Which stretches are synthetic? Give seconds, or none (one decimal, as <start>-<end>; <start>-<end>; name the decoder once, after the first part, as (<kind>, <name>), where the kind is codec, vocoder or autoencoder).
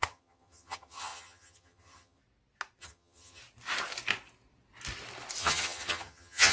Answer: 0.0-2.2 (vocoder, HiFi-GAN); 2.8-3.4; 5.4-6.5